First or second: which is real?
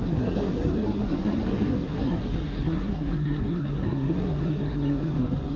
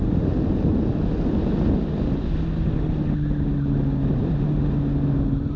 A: second